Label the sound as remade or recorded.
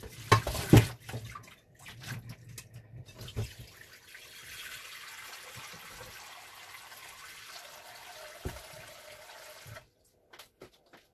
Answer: recorded